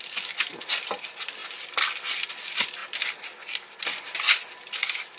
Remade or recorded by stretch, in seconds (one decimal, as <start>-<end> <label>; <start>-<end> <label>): 0.0-5.2 recorded